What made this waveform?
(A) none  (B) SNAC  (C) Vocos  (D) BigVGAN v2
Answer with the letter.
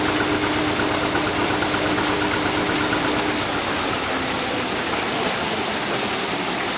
A